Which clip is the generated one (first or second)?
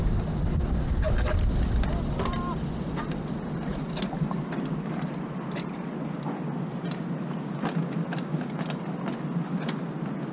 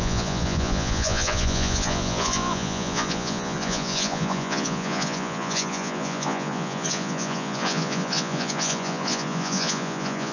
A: second